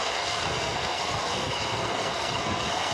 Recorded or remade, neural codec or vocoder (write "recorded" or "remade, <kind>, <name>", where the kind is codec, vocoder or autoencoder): remade, codec, SNAC